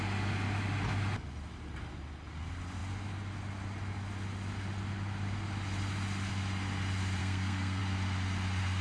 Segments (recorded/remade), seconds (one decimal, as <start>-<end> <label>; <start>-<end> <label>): 0.0-7.2 recorded; 7.2-7.8 remade; 7.8-8.8 recorded